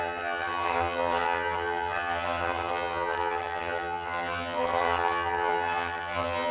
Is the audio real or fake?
fake